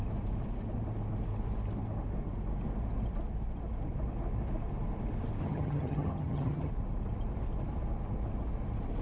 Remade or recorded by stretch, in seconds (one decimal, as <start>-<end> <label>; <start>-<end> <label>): 0.0-5.4 recorded; 5.4-6.7 remade; 6.7-9.0 recorded

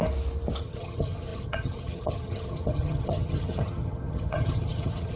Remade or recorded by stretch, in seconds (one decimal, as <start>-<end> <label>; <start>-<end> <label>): 0.0-0.6 recorded; 0.6-5.2 remade